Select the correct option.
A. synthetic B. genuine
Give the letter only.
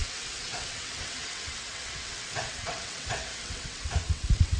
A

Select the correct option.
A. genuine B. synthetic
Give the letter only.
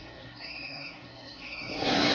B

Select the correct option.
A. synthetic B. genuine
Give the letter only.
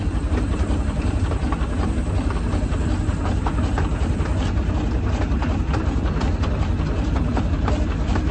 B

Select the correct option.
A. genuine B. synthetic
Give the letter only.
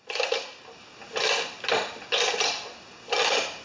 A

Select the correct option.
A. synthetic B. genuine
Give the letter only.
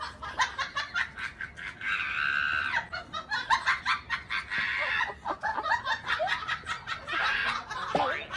B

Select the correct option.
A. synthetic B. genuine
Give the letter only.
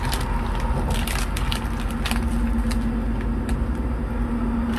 B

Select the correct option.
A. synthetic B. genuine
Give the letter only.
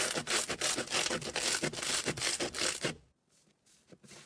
B